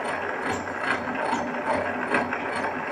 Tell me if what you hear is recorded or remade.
recorded